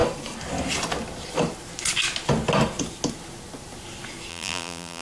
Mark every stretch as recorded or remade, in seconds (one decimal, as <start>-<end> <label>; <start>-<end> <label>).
0.0-4.3 recorded; 4.3-5.0 remade